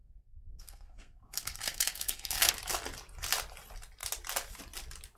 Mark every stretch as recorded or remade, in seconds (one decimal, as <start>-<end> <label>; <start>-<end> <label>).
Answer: 0.0-2.5 remade; 2.5-5.2 recorded